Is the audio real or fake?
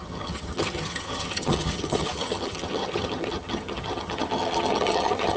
fake